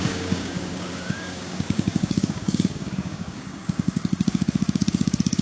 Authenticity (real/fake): fake